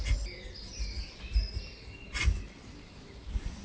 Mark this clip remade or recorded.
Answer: recorded